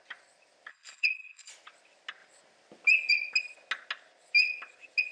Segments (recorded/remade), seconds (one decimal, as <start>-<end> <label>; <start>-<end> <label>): 0.0-0.7 recorded; 0.7-1.5 remade; 1.5-5.1 recorded